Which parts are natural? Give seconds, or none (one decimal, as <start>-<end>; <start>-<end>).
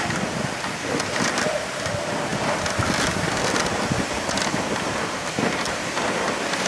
0.0-6.7